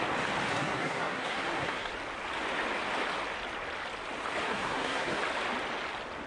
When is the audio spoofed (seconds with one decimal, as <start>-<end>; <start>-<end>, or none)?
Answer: 0.5-1.9; 4.4-5.2